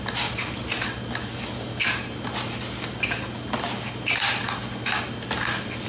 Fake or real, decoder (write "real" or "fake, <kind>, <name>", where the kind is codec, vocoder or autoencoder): real